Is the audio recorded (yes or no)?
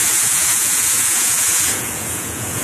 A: no